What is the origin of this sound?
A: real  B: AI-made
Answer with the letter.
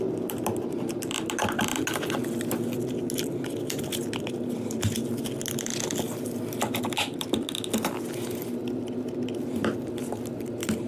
A